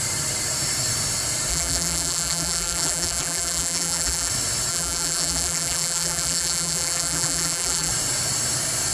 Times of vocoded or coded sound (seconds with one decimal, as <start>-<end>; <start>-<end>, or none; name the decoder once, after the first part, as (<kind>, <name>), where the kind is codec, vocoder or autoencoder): 1.5-4.3 (vocoder, BigVGAN v2); 4.7-7.9